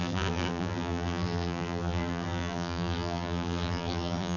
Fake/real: fake